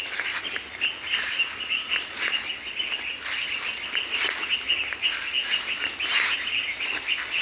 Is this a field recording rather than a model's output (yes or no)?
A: yes